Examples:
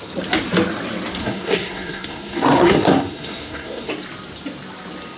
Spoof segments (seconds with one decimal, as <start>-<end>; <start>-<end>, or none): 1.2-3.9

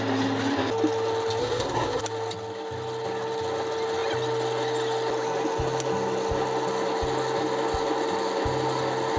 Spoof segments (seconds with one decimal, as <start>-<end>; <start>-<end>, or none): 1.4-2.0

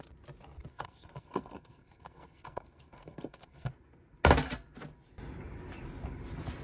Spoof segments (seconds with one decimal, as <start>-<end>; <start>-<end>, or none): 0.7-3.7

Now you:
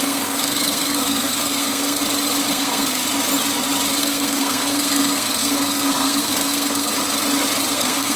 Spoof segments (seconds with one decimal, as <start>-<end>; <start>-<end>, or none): 0.0-2.0; 2.5-3.0; 4.0-6.9; 7.7-8.2

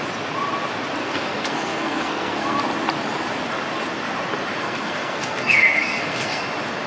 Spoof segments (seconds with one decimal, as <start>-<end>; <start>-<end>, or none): 1.0-2.6; 4.6-6.4

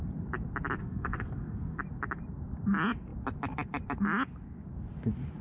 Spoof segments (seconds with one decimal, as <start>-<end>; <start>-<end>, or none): 0.8-1.8